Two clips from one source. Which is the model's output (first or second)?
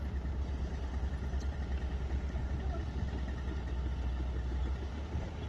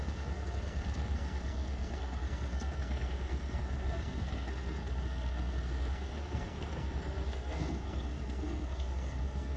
second